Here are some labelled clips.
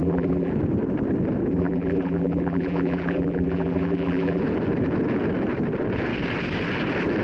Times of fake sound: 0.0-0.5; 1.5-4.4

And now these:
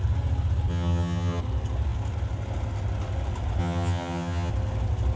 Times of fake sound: 0.7-1.4; 3.6-4.5

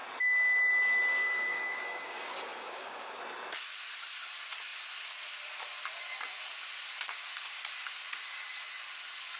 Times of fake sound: 1.2-3.2

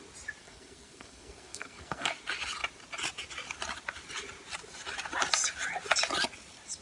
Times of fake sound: 0.4-2.1